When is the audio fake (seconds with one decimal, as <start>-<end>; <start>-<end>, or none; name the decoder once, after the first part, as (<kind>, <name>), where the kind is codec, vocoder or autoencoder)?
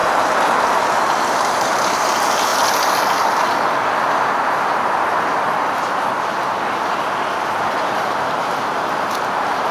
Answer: 0.0-2.5 (vocoder, BigVGAN v2); 7.4-9.7